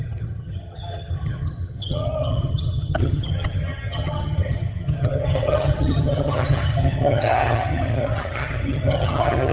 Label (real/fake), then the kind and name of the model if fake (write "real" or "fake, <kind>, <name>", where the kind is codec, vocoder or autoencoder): fake, vocoder, HiFi-GAN